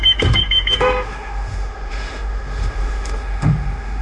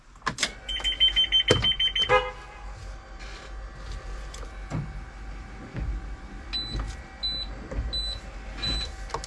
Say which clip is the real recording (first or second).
second